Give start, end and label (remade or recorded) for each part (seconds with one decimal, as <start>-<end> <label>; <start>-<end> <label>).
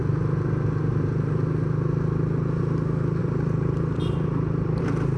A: 0.0-3.2 recorded; 3.2-4.8 remade; 4.8-5.2 recorded